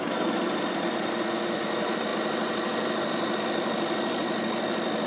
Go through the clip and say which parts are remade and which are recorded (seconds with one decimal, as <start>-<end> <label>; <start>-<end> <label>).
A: 0.0-2.1 remade; 2.1-3.4 recorded; 3.4-5.1 remade